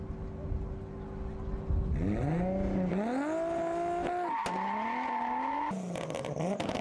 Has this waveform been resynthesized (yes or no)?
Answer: no